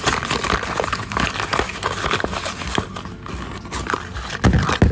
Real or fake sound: real